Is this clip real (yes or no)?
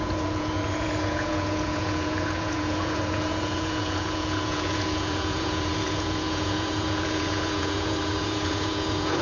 no